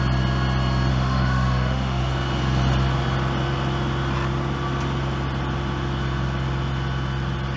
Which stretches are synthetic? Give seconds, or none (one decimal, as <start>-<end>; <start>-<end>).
0.9-2.0